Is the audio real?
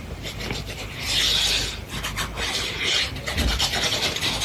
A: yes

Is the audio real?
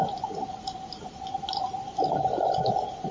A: yes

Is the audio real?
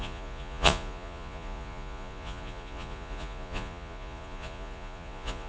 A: no